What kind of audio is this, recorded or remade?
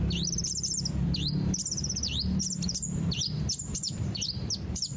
remade